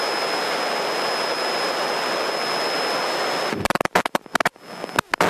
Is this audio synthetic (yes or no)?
no